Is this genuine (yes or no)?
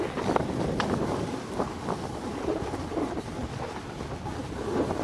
yes